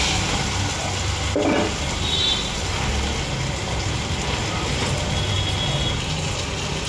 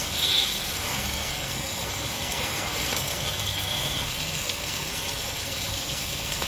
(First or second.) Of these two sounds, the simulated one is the second